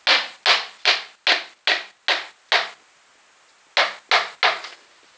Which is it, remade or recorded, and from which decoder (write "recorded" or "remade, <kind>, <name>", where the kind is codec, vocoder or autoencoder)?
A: recorded